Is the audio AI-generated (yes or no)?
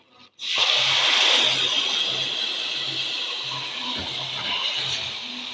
no